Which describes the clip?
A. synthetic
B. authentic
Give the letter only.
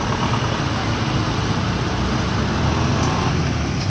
B